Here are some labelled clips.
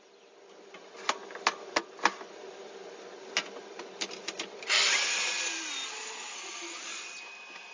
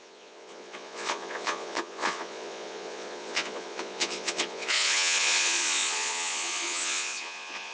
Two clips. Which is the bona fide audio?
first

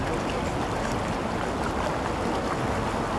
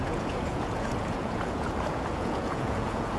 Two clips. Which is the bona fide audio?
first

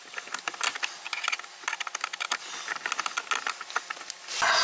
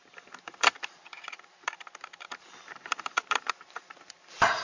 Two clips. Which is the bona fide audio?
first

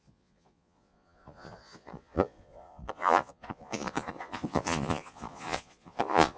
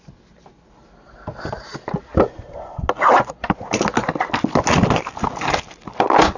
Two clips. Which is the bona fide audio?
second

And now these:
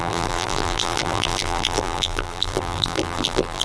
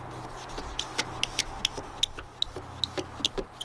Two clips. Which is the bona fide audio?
second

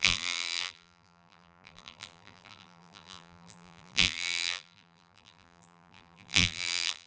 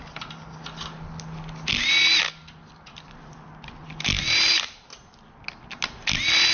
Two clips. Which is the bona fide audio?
second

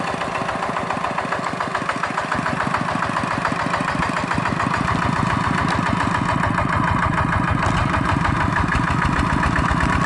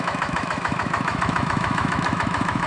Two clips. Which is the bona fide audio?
first